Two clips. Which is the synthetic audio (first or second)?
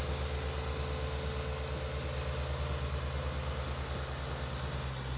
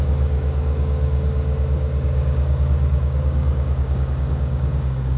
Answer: second